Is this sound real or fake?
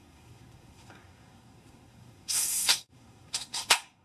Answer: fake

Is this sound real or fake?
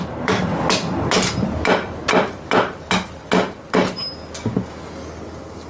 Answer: real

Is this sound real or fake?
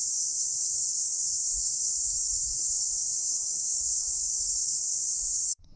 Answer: fake